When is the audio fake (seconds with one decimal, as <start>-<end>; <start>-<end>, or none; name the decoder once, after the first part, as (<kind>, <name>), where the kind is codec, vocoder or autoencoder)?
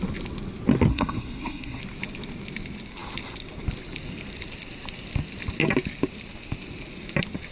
0.9-1.8 (codec, SNAC)